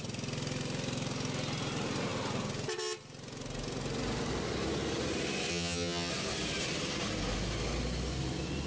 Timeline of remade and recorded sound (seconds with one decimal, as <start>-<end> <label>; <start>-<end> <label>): 0.0-5.5 recorded; 5.5-6.1 remade; 6.1-8.7 recorded